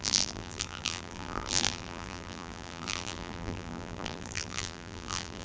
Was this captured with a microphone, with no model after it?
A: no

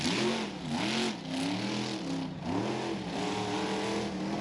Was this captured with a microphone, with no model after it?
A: yes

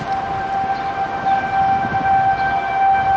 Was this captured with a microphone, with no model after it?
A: yes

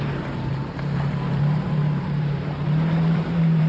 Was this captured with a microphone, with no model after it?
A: no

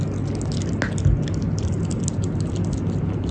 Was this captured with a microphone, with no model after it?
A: yes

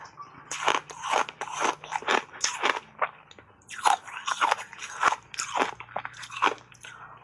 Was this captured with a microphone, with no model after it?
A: yes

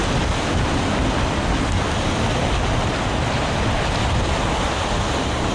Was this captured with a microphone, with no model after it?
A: yes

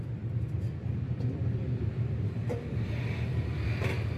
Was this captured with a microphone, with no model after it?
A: no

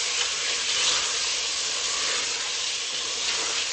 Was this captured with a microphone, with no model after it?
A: yes